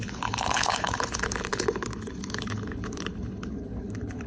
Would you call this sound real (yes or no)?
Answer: no